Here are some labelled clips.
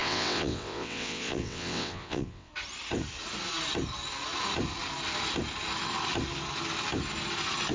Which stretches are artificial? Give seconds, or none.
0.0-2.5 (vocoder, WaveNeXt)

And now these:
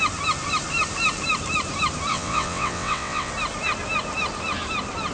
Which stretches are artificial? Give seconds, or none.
2.1-3.3 (vocoder, WaveNeXt)

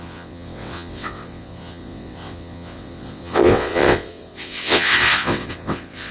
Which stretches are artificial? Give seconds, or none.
0.0-6.1 (vocoder, WaveNeXt)

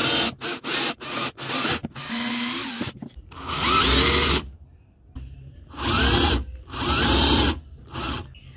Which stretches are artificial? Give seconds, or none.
none